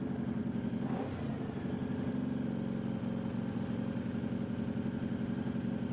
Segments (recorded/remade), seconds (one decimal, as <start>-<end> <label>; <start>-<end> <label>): 0.0-5.9 recorded